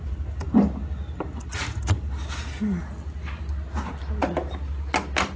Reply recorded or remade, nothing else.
recorded